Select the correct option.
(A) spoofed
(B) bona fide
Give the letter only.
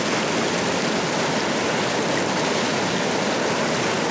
B